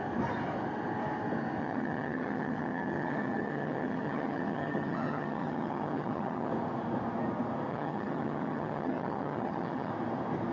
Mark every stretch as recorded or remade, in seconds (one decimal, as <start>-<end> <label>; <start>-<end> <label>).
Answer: 0.0-1.6 recorded; 1.6-6.5 remade; 6.5-7.7 recorded; 7.7-9.9 remade; 9.9-10.5 recorded